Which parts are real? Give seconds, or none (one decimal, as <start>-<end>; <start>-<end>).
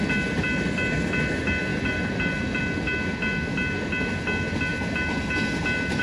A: 0.0-1.7; 2.6-6.0